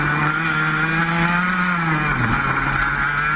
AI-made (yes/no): no